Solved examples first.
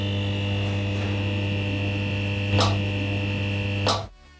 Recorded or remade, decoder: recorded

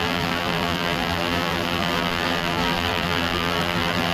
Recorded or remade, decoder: remade, vocoder, BigVGAN v2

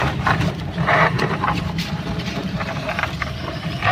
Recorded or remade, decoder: remade, vocoder, BigVGAN v2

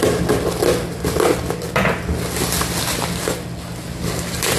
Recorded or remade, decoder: recorded